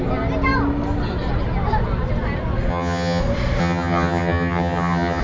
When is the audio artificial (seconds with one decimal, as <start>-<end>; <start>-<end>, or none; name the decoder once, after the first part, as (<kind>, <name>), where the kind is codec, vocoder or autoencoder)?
2.7-3.2 (vocoder, HiFi-GAN); 3.6-5.2